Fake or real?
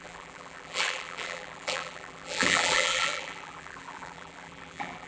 fake